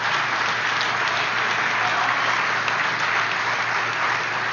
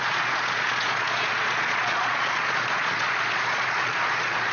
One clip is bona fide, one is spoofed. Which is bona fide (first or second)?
first